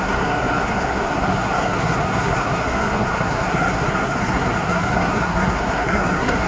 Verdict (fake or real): fake